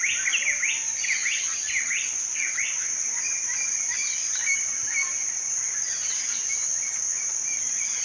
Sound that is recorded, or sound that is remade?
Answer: recorded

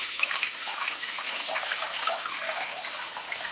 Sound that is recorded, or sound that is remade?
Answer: remade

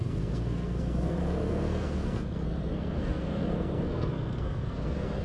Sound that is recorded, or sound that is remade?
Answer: remade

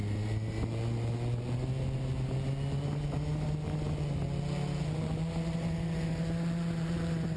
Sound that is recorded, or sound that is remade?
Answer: recorded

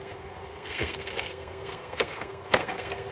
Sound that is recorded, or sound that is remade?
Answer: remade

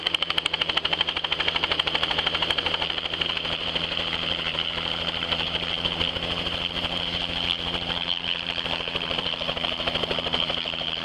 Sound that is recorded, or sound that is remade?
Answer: remade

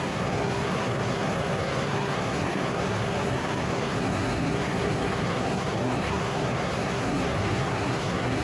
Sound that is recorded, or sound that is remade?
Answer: remade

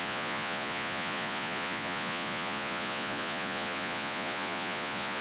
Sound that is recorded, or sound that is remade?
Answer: remade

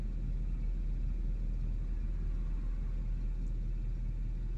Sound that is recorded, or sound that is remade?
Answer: recorded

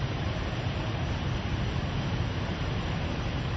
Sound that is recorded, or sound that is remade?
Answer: remade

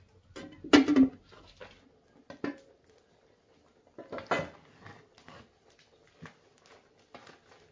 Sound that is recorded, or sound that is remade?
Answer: recorded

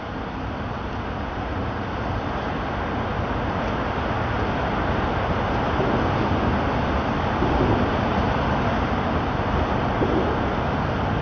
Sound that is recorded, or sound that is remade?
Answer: recorded